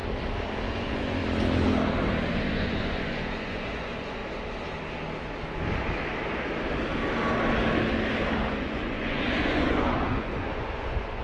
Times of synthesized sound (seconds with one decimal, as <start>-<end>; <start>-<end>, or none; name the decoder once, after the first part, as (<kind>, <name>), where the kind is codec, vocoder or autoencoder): 0.7-1.2 (vocoder, Vocos); 2.3-4.2; 8.4-11.2